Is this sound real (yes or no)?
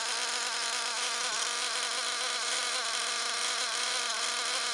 yes